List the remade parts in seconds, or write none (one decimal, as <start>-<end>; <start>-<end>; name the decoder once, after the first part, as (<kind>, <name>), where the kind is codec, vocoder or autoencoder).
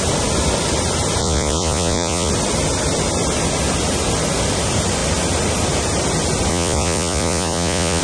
1.2-2.3 (vocoder, Vocos); 6.5-8.0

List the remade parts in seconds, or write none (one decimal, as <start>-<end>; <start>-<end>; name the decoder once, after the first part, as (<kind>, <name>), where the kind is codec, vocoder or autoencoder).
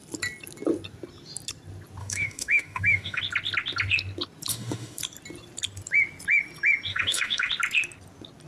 2.0-3.2 (autoencoder, DAC-VAE); 4.5-5.0; 6.9-7.5